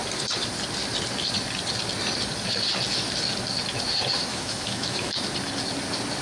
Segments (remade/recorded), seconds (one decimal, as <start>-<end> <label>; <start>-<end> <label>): 0.0-4.3 recorded; 4.3-5.1 remade; 5.1-6.2 recorded